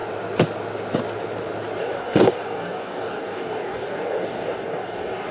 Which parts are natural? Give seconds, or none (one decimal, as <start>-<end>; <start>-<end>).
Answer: 0.0-1.8